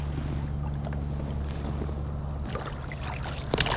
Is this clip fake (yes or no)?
no